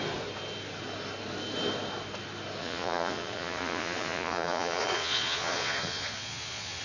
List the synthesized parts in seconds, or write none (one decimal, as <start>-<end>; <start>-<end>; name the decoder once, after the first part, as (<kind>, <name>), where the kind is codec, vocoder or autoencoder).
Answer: 2.6-6.8 (vocoder, Vocos)